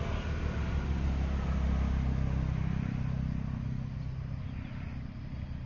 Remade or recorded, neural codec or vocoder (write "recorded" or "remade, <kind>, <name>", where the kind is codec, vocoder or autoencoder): recorded